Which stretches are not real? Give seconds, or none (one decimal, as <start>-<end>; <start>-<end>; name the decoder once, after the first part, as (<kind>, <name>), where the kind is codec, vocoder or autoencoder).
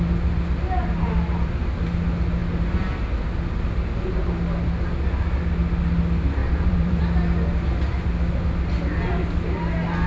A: 6.4-7.0 (vocoder, BigVGAN v2)